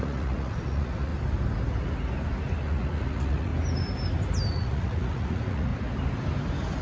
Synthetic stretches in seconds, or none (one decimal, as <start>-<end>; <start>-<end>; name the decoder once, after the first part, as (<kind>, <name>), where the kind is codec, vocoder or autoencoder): 0.0-1.1 (vocoder, Vocos); 2.6-3.5; 4.5-5.7